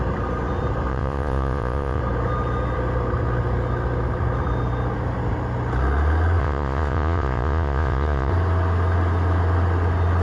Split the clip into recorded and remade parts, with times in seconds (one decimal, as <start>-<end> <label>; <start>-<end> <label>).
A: 0.0-0.9 recorded; 0.9-2.0 remade; 2.0-6.4 recorded; 6.4-8.3 remade; 8.3-10.2 recorded